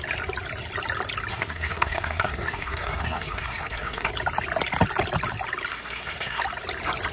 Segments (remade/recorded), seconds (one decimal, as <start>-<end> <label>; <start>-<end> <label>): 0.0-1.3 recorded; 1.3-4.1 remade; 4.1-5.7 recorded; 5.7-6.4 remade; 6.4-7.1 recorded